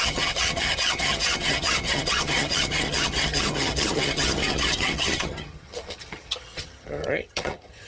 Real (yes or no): no